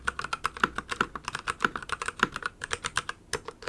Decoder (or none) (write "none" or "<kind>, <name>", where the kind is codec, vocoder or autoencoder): none